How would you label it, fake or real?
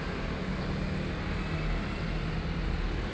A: real